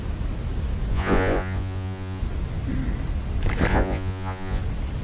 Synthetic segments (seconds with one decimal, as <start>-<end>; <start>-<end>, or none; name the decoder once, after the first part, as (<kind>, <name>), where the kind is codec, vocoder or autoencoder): 0.9-2.2 (vocoder, Vocos); 3.7-4.6